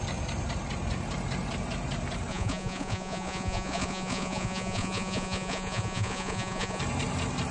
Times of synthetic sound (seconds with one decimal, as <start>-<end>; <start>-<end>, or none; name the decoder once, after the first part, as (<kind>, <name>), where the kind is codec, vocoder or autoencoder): 2.3-6.8 (vocoder, Vocos)